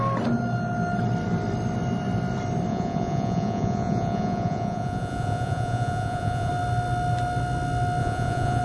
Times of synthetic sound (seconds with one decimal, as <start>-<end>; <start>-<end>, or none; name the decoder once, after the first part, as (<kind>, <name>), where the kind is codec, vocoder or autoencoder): 2.7-6.5 (vocoder, Vocos); 8.0-8.6